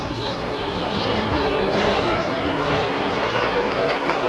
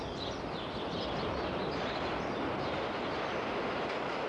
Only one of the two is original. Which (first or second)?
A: second